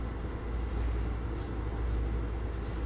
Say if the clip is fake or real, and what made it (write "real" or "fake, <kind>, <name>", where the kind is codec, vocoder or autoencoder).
real